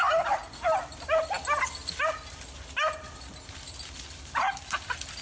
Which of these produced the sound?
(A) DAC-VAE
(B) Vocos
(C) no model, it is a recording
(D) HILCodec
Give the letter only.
C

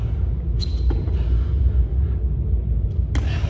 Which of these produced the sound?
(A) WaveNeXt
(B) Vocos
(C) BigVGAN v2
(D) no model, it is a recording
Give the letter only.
D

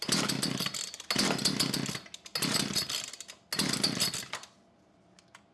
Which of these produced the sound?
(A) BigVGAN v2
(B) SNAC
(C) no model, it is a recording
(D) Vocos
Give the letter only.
C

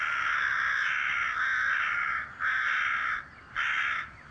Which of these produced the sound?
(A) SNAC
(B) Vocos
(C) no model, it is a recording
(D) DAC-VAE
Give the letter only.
C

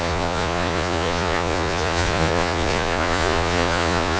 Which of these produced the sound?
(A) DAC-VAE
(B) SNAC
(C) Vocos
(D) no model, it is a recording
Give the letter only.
C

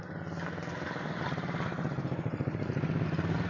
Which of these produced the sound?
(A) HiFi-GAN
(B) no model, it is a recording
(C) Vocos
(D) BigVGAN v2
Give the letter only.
B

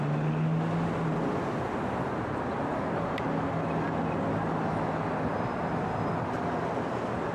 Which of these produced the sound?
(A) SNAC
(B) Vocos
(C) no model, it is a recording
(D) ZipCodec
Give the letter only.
C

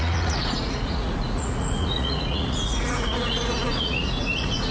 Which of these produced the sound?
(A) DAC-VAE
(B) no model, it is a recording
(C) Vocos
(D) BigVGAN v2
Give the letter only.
C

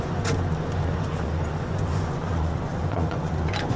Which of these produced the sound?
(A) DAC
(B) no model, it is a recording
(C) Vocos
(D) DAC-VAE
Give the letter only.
C